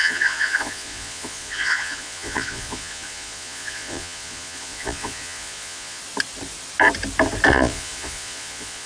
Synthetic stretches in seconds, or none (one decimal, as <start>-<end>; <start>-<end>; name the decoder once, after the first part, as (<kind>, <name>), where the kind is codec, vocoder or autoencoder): 0.0-6.0 (vocoder, Vocos); 7.5-8.9